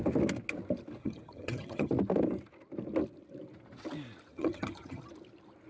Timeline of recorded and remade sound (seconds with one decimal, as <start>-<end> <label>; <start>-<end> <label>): 0.0-1.0 recorded; 1.0-1.9 remade; 1.9-4.3 recorded; 4.3-5.1 remade; 5.1-5.7 recorded